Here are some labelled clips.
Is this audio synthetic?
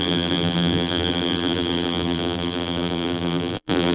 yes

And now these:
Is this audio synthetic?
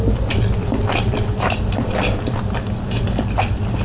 no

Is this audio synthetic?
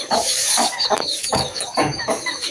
yes